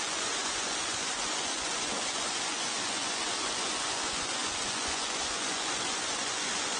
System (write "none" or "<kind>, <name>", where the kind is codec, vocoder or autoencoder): vocoder, Vocos